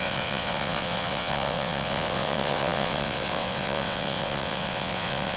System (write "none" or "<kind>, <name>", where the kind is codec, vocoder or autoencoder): vocoder, WaveNeXt